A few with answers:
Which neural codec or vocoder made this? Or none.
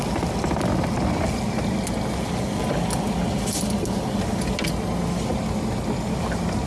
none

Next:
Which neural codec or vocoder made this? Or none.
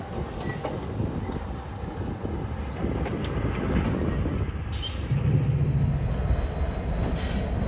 none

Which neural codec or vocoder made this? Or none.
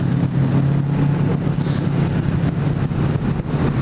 none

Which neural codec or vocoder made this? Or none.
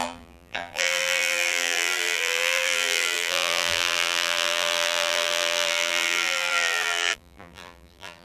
vocoder, BigVGAN v2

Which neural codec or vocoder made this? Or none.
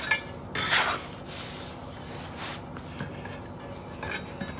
none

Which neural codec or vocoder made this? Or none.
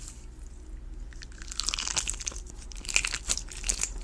none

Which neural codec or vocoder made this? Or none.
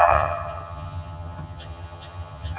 vocoder, HiFi-GAN